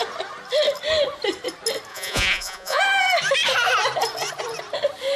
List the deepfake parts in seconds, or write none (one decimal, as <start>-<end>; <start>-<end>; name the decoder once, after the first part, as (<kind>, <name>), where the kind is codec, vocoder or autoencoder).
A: 1.9-2.8 (vocoder, Vocos)